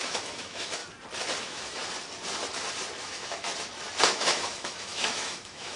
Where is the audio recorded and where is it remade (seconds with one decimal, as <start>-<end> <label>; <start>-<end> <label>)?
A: 0.0-0.8 remade; 0.8-1.4 recorded; 1.4-1.8 remade; 1.8-3.0 recorded; 3.0-3.5 remade; 3.5-4.1 recorded; 4.1-5.8 remade